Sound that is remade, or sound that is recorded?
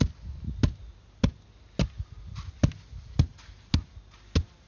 recorded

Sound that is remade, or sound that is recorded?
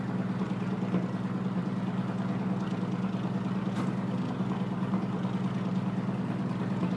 recorded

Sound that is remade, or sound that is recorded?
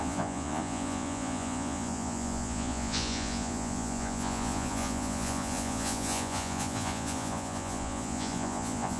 remade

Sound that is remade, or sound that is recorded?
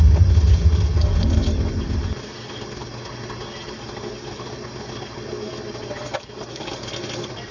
recorded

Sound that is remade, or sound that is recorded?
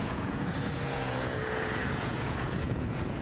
remade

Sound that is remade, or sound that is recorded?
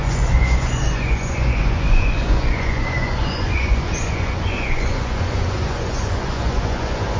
remade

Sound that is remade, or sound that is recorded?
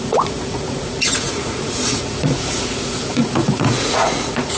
remade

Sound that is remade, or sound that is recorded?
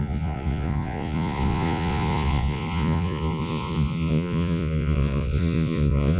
remade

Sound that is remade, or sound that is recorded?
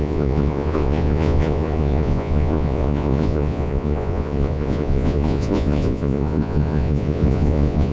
remade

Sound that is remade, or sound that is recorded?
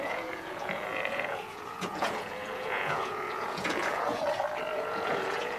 remade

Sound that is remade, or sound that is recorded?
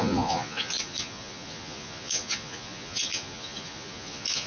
remade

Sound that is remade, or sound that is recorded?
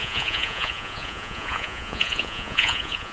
remade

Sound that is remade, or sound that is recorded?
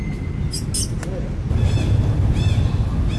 recorded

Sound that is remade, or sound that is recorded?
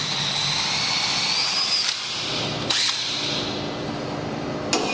recorded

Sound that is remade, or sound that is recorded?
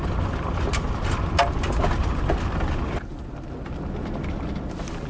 recorded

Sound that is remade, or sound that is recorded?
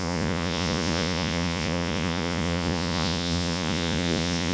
remade